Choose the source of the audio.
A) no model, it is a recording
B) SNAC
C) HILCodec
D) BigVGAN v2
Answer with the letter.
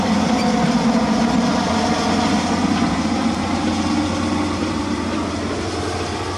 A